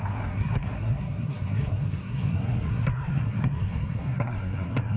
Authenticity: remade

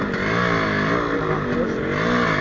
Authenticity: recorded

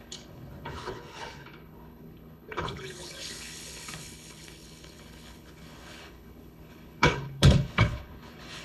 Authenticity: remade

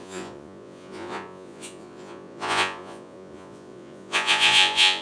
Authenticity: remade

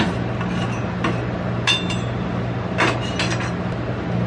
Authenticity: recorded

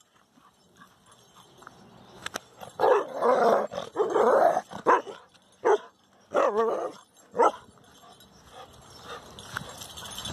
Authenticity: recorded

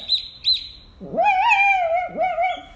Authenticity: recorded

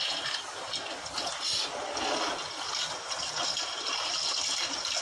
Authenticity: recorded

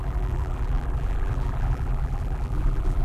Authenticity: remade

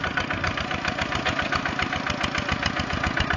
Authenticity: recorded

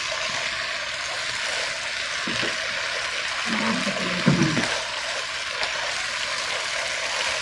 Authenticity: recorded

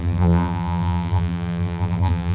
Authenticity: remade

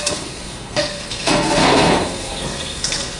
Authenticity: remade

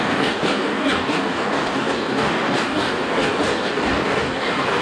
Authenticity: remade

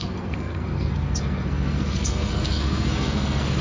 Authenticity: remade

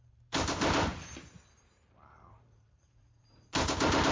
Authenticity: remade